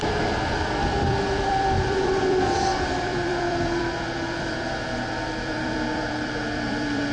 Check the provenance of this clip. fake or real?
fake